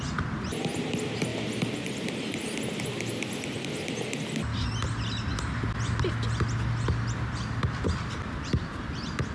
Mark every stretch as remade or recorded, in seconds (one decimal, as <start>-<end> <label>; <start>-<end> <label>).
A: 0.0-9.3 recorded